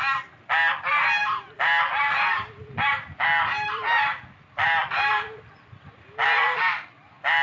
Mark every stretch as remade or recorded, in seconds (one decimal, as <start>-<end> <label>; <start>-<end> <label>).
0.0-7.4 recorded